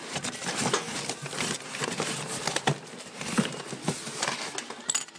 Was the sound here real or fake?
real